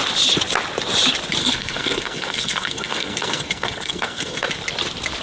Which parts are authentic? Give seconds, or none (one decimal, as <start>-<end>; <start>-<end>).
0.0-1.4; 4.5-5.2